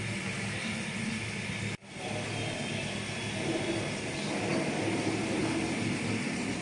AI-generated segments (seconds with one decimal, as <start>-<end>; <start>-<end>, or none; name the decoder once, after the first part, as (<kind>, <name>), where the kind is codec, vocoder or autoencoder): none